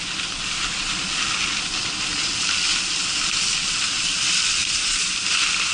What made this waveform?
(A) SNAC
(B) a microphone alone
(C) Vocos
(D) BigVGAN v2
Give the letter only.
B